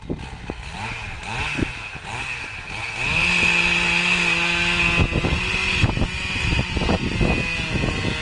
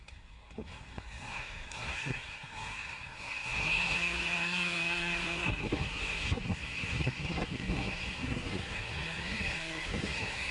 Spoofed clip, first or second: second